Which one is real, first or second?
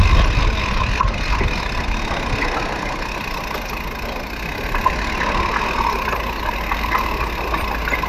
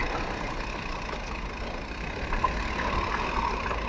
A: first